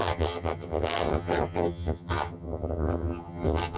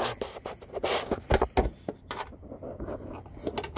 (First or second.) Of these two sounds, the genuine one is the second